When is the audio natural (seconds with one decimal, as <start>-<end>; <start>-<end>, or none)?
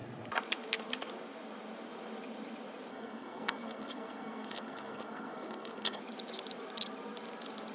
0.0-2.9; 6.0-7.7